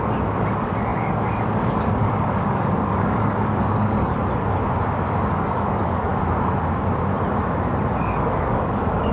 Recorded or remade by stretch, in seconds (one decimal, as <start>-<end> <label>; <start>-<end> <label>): 0.0-4.1 remade; 4.1-5.3 recorded; 5.3-6.1 remade; 6.1-7.9 recorded; 7.9-9.1 remade

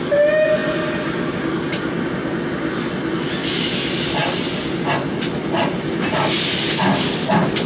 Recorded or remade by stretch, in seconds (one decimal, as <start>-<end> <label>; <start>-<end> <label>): 0.0-7.7 recorded

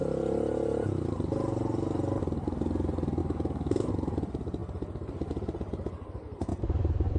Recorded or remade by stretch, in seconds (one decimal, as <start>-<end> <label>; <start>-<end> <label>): 0.0-3.2 recorded; 3.2-3.9 remade; 3.9-7.2 recorded

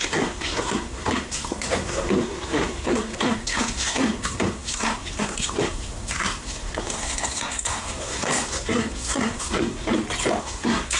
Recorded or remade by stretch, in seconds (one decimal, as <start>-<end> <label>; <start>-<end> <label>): 0.0-9.9 remade; 9.9-10.4 recorded; 10.4-11.0 remade

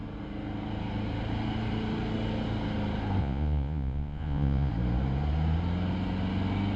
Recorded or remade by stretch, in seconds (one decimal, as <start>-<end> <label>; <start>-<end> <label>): 0.0-3.2 recorded; 3.2-4.7 remade; 4.7-6.8 recorded

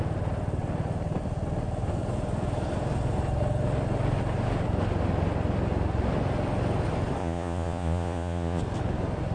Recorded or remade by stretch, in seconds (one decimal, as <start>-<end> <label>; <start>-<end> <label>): 0.0-7.2 recorded; 7.2-8.6 remade; 8.6-9.3 recorded

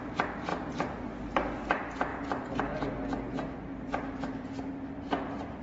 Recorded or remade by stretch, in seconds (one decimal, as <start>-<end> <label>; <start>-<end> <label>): 0.0-2.1 recorded; 2.1-2.6 remade; 2.6-5.6 recorded

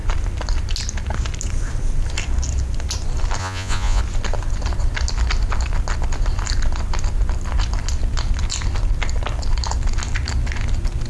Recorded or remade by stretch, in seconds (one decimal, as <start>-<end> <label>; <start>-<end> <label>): 0.0-3.4 recorded; 3.4-4.0 remade; 4.0-11.1 recorded